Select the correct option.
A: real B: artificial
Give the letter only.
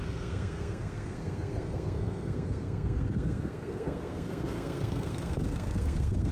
B